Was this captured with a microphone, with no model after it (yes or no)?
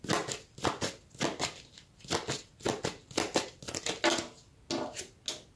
yes